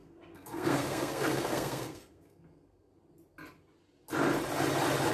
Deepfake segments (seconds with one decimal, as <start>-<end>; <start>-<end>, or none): 0.0-2.9